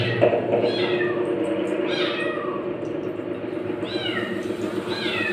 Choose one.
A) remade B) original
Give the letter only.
B